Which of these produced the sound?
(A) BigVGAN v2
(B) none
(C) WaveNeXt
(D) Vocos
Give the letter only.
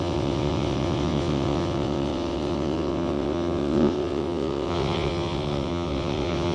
C